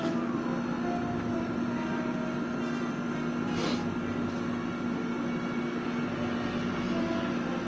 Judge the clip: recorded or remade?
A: recorded